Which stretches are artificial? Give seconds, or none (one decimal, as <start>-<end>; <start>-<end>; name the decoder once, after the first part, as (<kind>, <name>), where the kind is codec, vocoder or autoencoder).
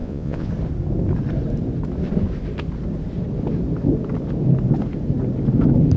0.0-0.5 (vocoder, Vocos)